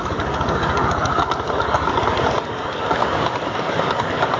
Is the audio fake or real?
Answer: fake